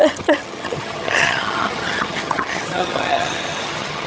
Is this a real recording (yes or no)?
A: no